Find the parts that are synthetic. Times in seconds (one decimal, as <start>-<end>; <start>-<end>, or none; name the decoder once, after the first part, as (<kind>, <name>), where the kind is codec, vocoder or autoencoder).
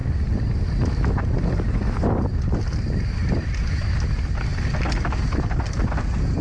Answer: none